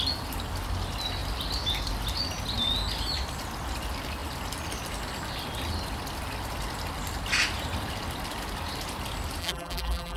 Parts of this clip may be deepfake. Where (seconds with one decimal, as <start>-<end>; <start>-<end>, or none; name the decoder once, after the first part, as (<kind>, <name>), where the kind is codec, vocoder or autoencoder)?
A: 9.4-10.2 (vocoder, BigVGAN v2)